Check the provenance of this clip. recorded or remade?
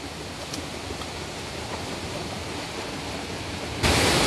recorded